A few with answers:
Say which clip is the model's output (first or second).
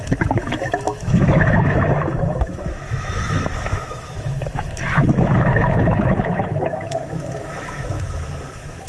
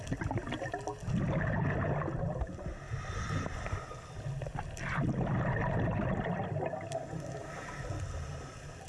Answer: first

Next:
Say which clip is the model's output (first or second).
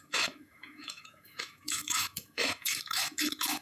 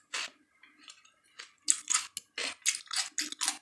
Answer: first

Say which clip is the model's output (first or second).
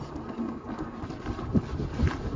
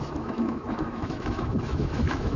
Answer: second